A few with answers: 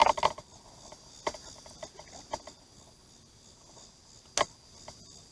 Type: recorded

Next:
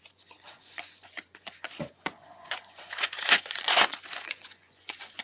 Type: remade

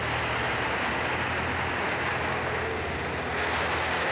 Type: recorded